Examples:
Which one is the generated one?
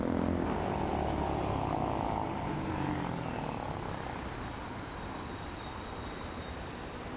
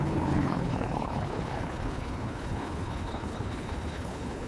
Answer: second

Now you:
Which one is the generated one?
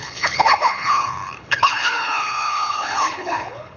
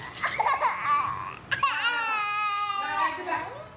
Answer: first